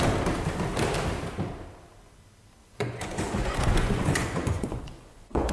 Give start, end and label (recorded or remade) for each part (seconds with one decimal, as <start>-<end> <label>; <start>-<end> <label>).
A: 0.0-2.6 recorded; 2.6-5.5 remade